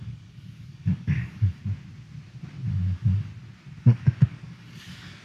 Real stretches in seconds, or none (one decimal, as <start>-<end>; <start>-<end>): 1.6-2.7; 3.3-3.8

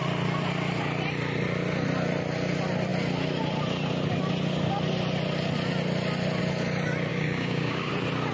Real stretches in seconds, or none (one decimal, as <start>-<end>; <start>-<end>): 0.0-7.1; 7.9-8.3

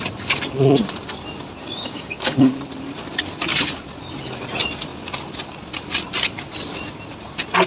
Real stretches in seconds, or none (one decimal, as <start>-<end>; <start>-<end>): 0.0-1.6; 2.5-7.7

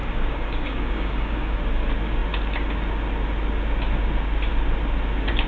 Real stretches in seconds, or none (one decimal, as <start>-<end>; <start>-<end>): 1.6-5.5

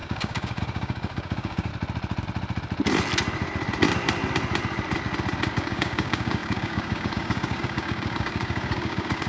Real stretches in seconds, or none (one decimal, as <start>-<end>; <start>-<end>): 1.7-5.5

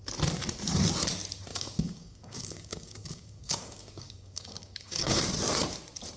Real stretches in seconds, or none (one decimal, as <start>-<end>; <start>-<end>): 0.0-1.5; 5.2-6.2

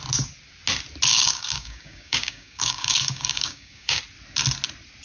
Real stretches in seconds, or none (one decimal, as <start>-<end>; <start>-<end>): 0.0-1.1; 4.0-5.0